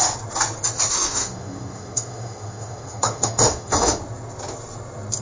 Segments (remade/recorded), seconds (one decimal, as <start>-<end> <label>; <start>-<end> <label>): 0.0-0.9 recorded; 0.9-4.0 remade; 4.0-5.2 recorded